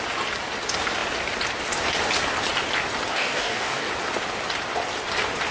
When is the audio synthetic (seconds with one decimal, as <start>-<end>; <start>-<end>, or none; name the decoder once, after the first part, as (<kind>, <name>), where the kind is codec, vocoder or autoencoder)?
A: 3.1-3.9 (codec, DAC)